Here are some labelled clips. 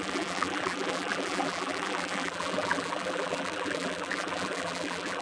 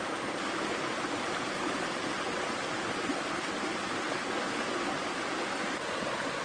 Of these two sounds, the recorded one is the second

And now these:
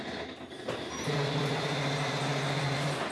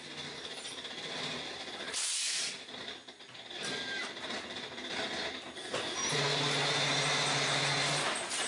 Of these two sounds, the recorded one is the second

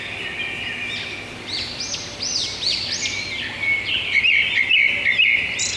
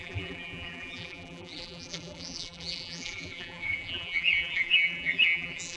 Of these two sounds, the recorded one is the first